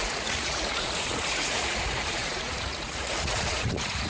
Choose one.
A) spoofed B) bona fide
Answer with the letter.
A